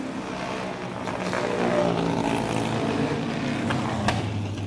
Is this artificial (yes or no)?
no